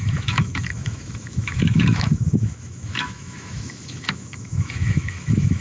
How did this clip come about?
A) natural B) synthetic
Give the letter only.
B